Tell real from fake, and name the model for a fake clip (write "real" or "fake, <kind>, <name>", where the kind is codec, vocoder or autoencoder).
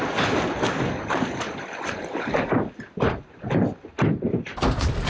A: real